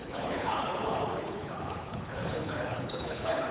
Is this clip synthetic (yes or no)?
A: yes